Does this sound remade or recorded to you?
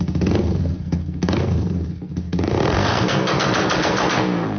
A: remade